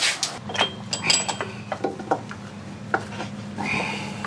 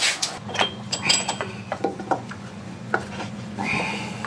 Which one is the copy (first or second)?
second